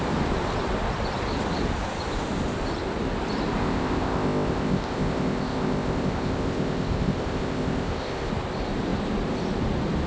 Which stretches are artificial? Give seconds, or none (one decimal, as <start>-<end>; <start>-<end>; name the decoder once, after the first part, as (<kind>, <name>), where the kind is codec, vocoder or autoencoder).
3.6-8.3 (codec, ZipCodec)